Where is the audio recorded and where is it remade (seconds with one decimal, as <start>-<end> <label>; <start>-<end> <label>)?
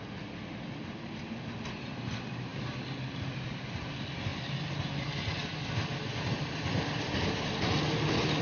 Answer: 0.0-2.5 recorded; 2.5-3.8 remade; 3.8-4.3 recorded; 4.3-4.9 remade; 4.9-8.4 recorded